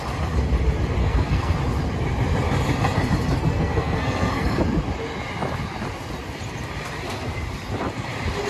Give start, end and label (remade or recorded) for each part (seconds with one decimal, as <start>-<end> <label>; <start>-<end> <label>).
0.0-1.0 recorded; 1.0-1.6 remade; 1.6-3.4 recorded; 3.4-4.6 remade; 4.6-8.5 recorded